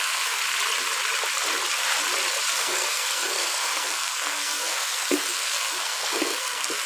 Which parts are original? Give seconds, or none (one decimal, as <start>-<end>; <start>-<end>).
0.4-2.6